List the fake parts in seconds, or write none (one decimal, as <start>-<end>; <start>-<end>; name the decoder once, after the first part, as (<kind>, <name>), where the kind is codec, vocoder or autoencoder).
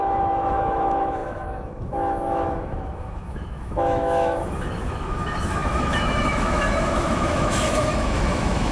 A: 0.0-8.7 (autoencoder, DAC-VAE)